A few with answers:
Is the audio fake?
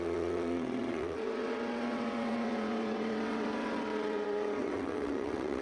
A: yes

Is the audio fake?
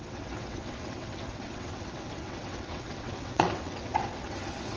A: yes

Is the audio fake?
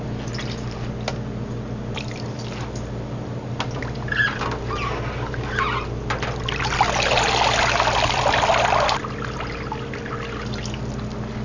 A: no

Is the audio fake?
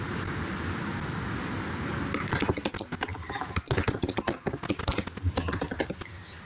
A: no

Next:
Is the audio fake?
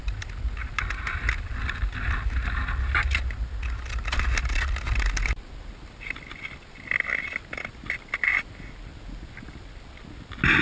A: no